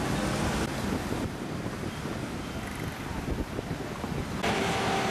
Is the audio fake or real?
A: real